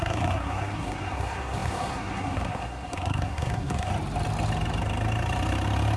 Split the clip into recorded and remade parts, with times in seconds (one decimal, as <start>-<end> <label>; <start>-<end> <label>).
0.0-3.9 remade; 3.9-6.0 recorded